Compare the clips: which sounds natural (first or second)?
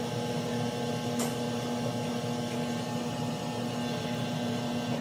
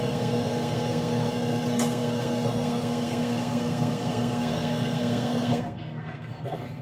first